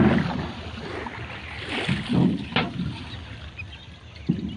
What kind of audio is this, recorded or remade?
recorded